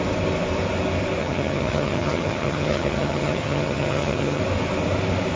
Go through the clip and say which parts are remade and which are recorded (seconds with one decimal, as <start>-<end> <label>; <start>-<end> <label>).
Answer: 0.0-1.2 recorded; 1.2-4.4 remade; 4.4-5.4 recorded